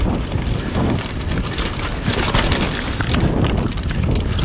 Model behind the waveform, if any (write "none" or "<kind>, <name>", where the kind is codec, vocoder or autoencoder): vocoder, BigVGAN v2